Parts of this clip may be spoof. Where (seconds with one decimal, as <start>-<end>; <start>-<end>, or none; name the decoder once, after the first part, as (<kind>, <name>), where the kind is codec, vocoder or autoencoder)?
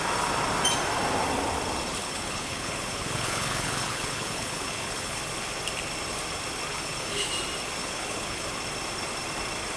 2.0-5.2 (codec, HILCodec); 6.7-7.3; 7.8-8.5